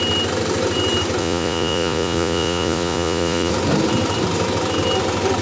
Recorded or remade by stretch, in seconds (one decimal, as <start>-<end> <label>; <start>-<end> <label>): 0.0-1.2 recorded; 1.2-3.5 remade; 3.5-5.4 recorded